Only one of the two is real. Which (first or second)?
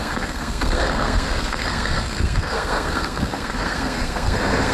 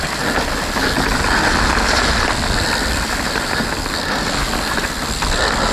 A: second